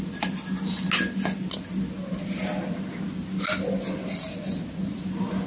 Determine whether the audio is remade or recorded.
recorded